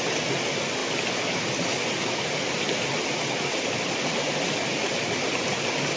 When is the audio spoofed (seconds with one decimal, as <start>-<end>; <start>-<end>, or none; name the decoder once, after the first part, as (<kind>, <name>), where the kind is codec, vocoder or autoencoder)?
none